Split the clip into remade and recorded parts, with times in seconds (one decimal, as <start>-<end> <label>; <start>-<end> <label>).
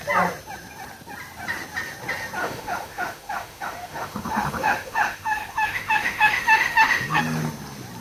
0.0-2.4 recorded; 2.4-7.2 remade; 7.2-8.0 recorded